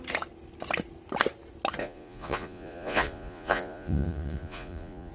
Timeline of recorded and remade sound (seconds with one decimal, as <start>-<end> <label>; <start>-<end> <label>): 0.0-1.8 recorded; 1.8-5.1 remade